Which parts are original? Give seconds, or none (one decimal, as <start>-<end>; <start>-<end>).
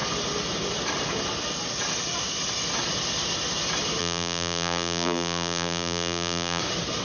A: 0.0-4.0; 6.6-7.0